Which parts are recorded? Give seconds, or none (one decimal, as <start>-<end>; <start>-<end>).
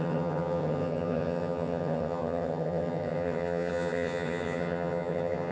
none